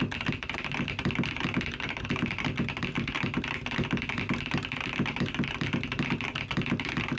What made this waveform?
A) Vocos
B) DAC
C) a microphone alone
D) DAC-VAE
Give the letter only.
C